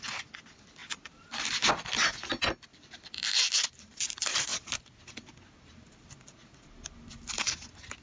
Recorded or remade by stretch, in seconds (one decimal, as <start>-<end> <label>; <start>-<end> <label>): 0.0-8.0 recorded